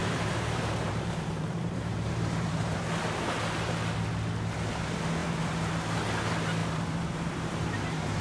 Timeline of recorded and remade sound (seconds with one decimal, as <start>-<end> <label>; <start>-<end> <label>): 0.0-2.8 remade; 2.8-5.2 recorded; 5.2-5.7 remade; 5.7-6.6 recorded; 6.6-8.2 remade